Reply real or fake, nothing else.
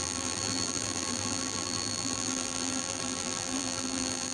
fake